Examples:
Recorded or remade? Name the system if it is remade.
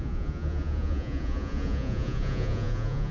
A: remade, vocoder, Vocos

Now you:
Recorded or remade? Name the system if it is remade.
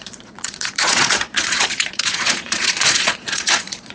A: remade, vocoder, Vocos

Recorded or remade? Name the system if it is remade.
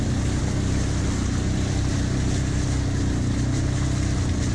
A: recorded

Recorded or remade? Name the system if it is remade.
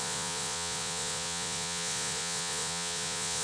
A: remade, vocoder, Vocos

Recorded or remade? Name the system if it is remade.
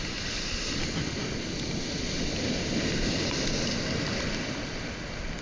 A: recorded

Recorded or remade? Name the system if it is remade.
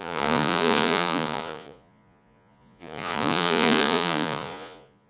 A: remade, vocoder, Vocos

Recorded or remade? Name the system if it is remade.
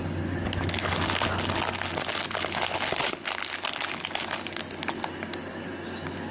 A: recorded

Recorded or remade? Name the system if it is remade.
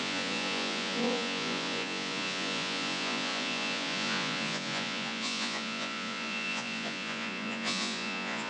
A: remade, vocoder, Vocos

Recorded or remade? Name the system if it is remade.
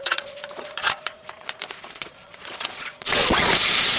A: remade, vocoder, Vocos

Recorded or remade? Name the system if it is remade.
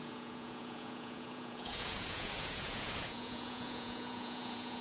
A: remade, vocoder, Vocos